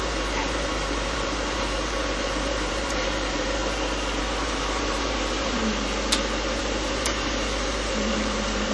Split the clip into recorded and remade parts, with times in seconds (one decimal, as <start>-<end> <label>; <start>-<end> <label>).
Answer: 0.0-3.6 remade; 3.6-4.2 recorded; 4.2-5.6 remade; 5.6-6.6 recorded; 6.6-8.7 remade